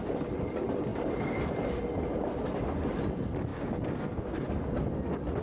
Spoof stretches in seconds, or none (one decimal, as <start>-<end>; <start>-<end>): none